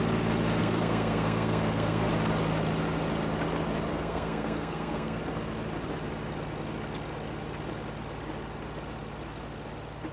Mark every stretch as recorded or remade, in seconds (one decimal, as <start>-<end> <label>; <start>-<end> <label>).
0.0-0.6 recorded; 0.6-2.1 remade; 2.1-3.9 recorded; 3.9-5.2 remade; 5.2-10.1 recorded